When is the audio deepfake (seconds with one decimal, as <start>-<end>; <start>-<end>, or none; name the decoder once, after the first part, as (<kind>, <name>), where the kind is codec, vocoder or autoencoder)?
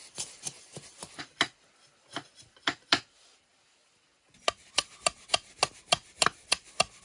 0.0-1.2 (vocoder, BigVGAN v2)